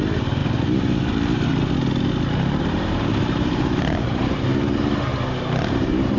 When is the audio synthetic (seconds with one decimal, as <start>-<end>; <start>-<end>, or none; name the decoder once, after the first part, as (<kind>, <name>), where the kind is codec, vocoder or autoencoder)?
0.0-0.4 (vocoder, BigVGAN v2); 2.6-4.5; 5.7-6.2